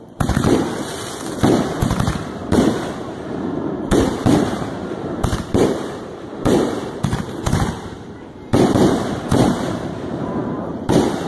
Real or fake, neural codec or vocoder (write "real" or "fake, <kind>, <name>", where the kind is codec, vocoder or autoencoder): fake, vocoder, BigVGAN v2